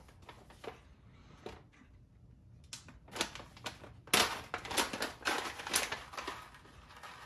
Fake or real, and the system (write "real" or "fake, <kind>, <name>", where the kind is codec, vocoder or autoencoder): real